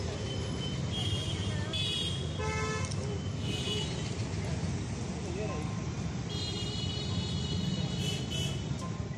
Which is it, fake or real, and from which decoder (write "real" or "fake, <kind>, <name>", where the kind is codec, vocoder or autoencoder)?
real